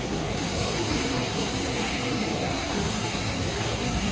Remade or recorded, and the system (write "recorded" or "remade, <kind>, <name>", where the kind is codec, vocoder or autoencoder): remade, codec, SNAC